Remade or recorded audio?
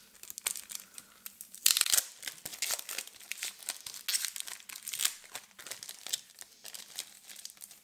recorded